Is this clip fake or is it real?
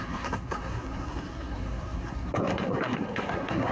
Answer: fake